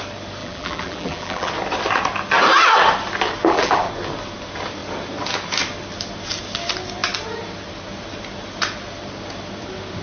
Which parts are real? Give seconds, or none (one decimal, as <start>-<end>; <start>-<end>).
0.0-0.4; 1.5-3.4; 3.9-10.0